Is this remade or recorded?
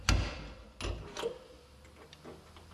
recorded